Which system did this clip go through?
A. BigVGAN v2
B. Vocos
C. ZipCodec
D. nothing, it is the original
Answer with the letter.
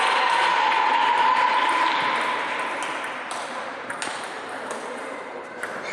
A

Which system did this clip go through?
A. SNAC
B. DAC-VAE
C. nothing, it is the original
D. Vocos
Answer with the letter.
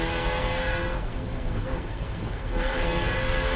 A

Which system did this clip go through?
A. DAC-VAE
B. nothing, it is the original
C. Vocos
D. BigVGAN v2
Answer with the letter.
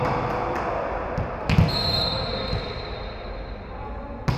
B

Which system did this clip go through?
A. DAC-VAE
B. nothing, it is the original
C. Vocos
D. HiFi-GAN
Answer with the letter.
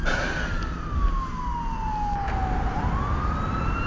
B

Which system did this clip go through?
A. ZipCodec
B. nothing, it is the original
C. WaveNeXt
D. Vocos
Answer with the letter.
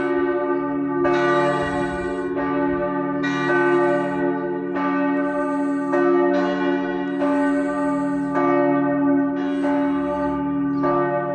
B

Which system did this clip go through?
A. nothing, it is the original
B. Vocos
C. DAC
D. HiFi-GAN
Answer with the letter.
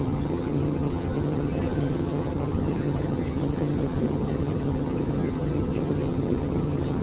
D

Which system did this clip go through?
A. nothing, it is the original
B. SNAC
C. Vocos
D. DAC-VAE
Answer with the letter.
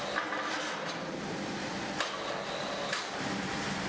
A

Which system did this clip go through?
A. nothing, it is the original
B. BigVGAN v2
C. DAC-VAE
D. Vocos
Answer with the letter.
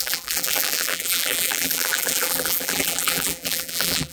B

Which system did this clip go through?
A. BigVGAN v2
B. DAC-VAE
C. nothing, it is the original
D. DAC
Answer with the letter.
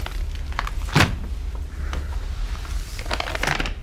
C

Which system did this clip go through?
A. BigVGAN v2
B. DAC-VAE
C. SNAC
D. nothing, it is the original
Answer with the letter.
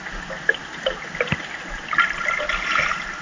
D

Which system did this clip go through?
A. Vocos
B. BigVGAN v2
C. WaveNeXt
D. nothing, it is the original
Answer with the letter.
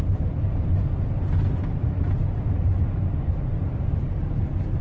D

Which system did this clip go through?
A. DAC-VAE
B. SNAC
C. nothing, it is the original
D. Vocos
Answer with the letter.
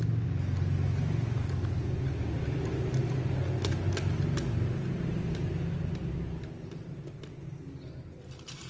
C